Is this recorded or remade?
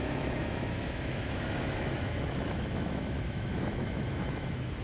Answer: remade